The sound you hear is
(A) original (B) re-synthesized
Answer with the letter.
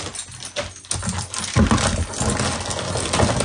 A